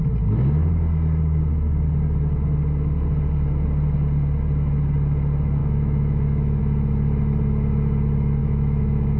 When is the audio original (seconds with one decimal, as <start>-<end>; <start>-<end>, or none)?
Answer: 0.0-5.6; 6.6-8.4